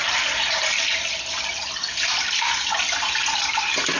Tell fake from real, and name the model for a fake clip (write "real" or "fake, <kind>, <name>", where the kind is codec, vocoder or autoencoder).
real